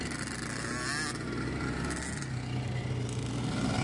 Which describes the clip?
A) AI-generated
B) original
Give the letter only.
B